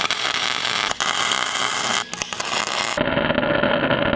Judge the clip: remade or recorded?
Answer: recorded